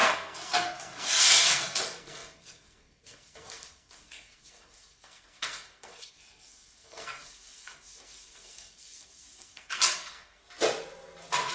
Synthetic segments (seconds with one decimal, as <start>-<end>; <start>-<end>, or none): 0.0-10.4